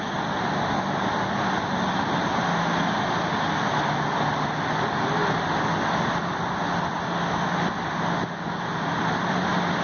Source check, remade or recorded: recorded